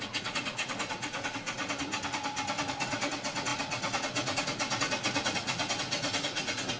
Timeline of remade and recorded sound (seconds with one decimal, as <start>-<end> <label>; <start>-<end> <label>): 0.0-1.6 remade; 1.6-2.8 recorded; 2.8-6.8 remade